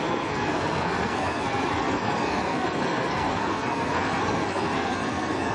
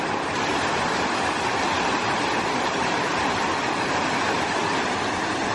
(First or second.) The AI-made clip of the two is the first